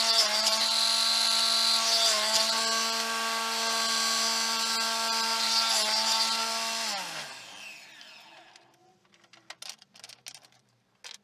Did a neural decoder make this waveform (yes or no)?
no